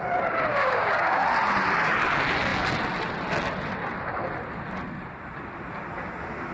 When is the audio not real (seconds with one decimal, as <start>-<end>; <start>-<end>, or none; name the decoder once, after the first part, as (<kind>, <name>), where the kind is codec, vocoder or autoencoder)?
0.5-1.2 (codec, DAC)